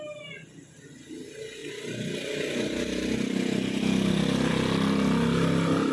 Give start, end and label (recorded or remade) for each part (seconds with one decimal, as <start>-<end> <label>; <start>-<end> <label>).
0.0-5.9 recorded